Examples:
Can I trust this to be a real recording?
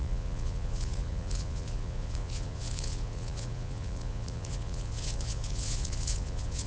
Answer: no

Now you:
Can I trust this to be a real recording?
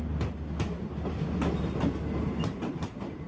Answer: yes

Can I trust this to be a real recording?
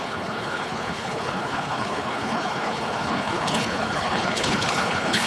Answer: no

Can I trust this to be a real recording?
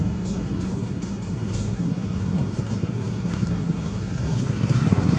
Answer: no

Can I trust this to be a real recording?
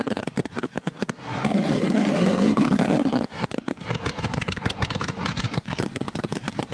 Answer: no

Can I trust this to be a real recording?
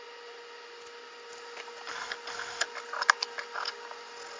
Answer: yes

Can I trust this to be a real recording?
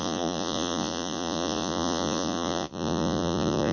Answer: no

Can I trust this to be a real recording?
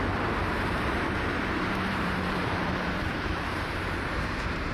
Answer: no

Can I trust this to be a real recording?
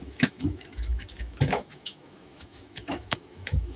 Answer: no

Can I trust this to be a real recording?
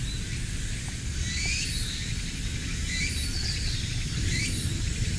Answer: yes